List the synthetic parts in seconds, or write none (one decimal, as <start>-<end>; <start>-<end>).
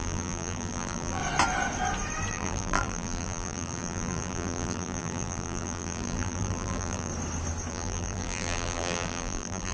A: 0.0-1.2; 2.3-7.1; 7.7-9.7